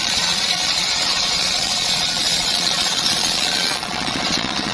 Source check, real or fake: fake